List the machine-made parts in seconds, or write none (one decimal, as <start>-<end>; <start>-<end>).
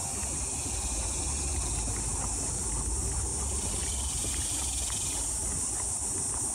none